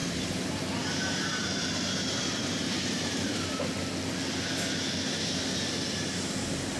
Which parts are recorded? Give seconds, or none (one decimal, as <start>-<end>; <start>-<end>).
3.6-6.8